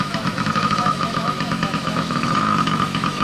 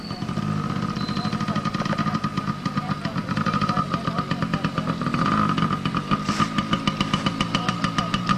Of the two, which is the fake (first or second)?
first